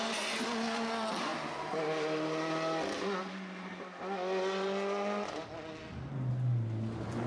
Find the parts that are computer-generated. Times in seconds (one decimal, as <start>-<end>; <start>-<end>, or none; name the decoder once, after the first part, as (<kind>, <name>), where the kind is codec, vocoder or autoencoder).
none